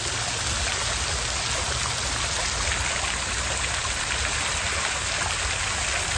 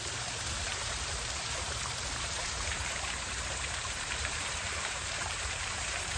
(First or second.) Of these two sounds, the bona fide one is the first